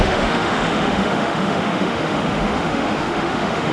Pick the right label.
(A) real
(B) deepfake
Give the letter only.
B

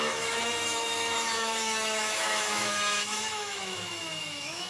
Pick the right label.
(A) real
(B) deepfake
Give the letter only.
B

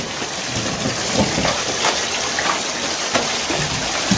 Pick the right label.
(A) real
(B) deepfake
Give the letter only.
A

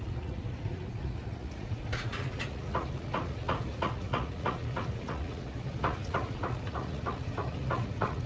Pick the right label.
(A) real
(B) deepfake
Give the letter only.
B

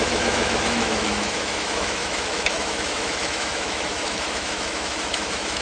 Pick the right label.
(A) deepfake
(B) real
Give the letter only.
A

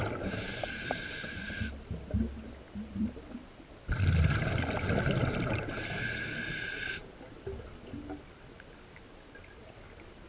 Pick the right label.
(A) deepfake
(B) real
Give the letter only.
B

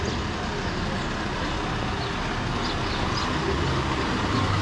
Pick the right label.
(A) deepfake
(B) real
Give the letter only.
B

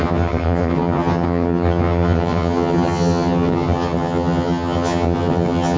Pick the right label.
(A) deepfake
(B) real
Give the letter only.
A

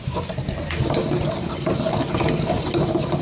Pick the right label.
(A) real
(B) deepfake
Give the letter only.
A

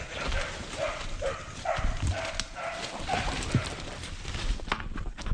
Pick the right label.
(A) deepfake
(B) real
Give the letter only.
B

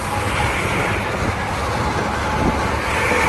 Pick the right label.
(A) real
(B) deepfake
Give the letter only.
A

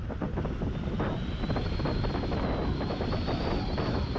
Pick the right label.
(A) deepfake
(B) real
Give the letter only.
B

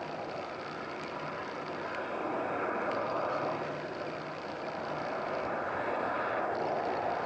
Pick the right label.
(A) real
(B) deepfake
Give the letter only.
A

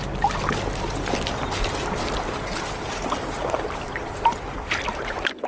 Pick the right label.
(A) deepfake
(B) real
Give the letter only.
B